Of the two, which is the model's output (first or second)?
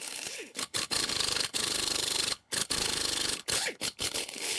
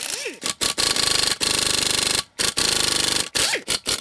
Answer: first